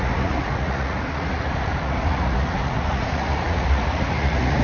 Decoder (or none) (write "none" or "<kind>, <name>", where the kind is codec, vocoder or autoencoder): vocoder, Vocos